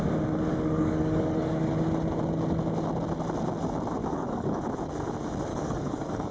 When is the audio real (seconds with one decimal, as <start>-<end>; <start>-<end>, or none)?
0.0-0.5; 1.7-4.0; 4.6-5.5